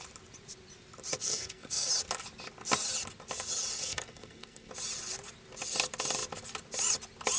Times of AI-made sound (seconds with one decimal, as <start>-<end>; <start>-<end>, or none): 1.2-1.9; 3.8-4.7